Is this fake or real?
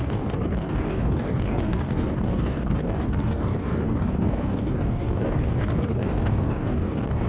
fake